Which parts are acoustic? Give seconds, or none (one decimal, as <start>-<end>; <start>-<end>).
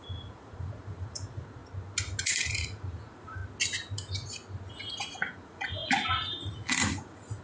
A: 1.6-2.2; 3.4-4.7